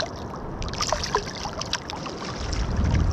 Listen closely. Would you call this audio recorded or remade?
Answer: recorded